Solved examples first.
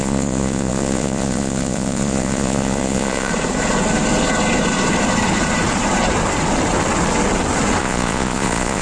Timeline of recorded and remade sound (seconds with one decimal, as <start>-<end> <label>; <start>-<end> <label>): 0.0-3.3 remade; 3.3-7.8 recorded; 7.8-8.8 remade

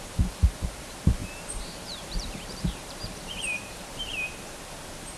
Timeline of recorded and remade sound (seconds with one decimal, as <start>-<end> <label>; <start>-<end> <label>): 0.0-1.2 recorded; 1.2-4.3 remade; 4.3-5.2 recorded

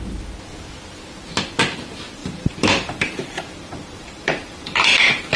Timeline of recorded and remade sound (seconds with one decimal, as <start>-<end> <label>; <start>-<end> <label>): 0.0-2.2 recorded; 2.2-5.4 remade

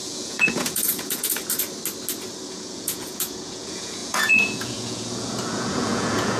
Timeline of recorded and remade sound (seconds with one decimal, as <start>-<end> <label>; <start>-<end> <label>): 0.0-1.4 remade; 1.4-2.5 recorded; 2.5-6.4 remade

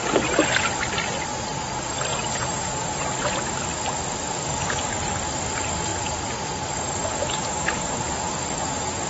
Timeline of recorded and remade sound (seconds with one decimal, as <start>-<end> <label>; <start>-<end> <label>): 0.0-5.9 recorded; 5.9-6.7 remade; 6.7-9.1 recorded

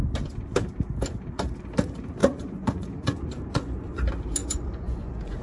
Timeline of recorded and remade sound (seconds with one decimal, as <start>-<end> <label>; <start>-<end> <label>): 0.0-2.2 recorded; 2.2-3.9 remade; 3.9-4.4 recorded; 4.4-5.4 remade